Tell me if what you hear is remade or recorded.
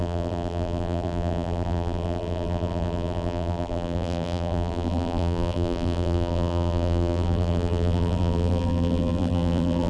remade